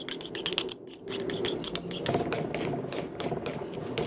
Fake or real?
real